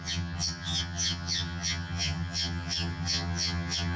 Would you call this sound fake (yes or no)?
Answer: yes